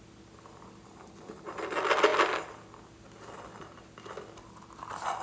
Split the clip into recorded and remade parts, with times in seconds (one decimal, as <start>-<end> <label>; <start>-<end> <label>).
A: 0.0-5.2 recorded